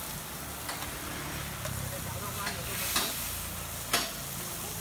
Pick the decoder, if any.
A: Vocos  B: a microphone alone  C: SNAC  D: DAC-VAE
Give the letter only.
B